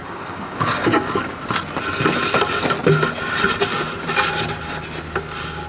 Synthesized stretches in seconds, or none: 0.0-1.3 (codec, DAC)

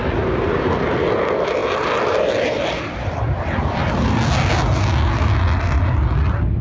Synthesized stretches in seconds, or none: none

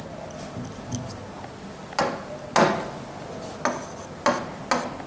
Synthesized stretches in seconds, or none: none

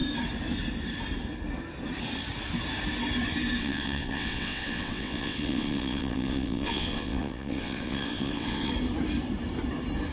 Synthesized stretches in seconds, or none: 3.6-8.7 (vocoder, WaveNeXt)

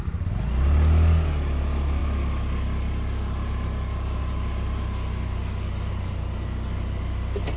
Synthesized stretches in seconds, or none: none

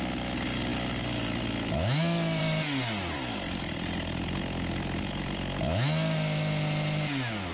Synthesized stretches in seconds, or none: none

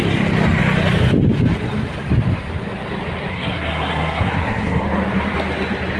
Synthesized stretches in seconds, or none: 3.3-4.8 (codec, SNAC)

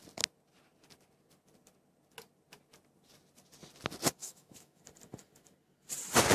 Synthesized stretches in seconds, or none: 4.2-4.8 (autoencoder, DAC-VAE)